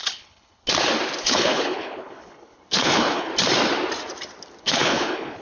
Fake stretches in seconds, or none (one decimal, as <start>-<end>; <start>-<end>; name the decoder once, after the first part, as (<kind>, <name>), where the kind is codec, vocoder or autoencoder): 0.0-0.6 (codec, HILCodec); 1.2-3.3; 4.6-5.4